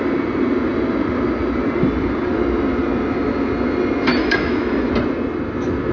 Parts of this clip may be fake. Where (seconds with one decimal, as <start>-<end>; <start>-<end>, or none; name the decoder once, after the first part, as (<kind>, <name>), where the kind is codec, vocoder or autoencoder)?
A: 4.1-4.9 (autoencoder, DAC-VAE)